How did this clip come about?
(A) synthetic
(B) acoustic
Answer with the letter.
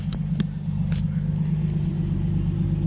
B